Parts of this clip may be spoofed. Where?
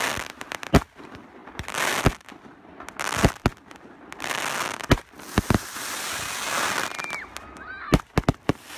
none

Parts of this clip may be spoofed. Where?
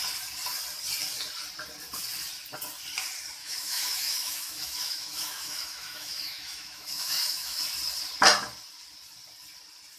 3.4-7.6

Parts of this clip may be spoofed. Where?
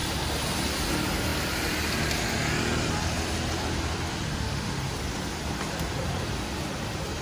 4.3-4.8